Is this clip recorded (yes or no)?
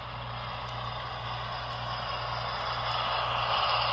yes